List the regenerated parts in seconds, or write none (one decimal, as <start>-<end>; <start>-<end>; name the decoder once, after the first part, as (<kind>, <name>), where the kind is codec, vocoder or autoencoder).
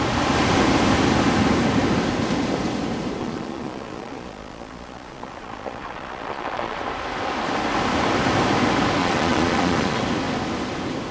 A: 3.2-6.8 (vocoder, Vocos); 9.0-10.0